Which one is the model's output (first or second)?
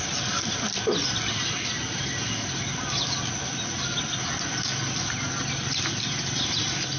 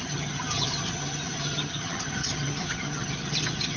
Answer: second